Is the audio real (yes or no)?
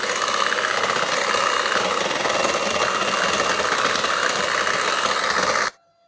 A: yes